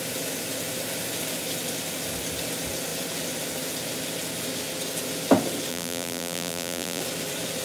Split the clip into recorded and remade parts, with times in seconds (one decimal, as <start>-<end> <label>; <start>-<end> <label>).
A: 0.0-5.7 recorded; 5.7-7.0 remade; 7.0-7.6 recorded